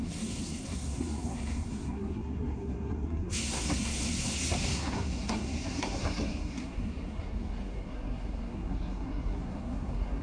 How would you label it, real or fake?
fake